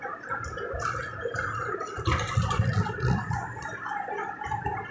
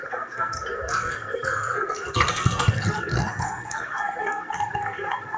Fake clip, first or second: second